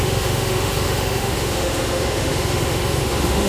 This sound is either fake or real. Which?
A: fake